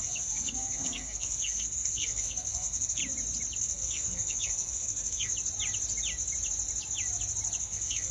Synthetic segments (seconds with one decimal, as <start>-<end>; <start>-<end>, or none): 0.0-3.0; 3.6-5.3; 7.6-8.1